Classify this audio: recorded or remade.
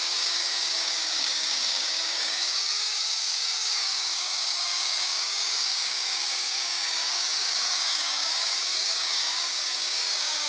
remade